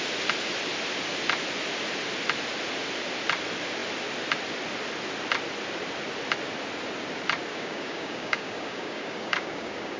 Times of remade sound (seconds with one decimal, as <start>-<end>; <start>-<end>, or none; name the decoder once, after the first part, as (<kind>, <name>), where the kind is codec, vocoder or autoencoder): 7.5-10.0 (codec, DAC)